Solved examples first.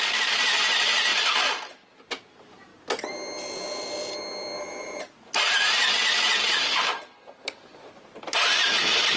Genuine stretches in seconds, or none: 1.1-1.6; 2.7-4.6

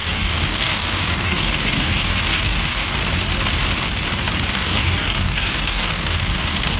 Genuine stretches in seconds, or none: 3.0-4.5

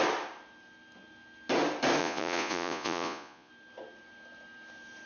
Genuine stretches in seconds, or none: 0.0-2.0; 3.5-5.1

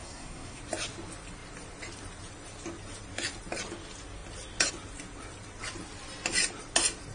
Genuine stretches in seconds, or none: 0.6-7.1